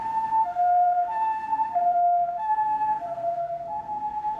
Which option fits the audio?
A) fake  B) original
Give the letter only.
A